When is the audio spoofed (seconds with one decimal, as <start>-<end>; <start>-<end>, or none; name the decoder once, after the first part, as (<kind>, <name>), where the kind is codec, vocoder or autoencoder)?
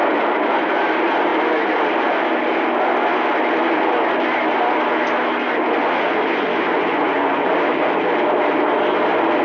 5.8-7.5 (vocoder, Vocos)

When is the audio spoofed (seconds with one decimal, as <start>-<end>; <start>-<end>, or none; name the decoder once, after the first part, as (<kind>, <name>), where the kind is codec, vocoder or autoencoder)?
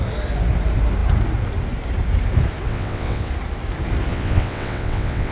2.7-3.3 (vocoder, WaveNeXt); 4.1-5.3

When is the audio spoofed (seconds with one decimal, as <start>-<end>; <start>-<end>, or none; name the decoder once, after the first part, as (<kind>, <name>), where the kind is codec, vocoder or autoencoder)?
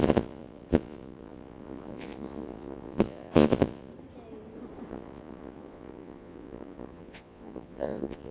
0.0-3.9 (vocoder, Vocos); 4.9-8.3